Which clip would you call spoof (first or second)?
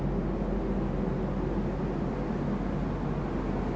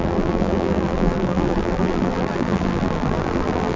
second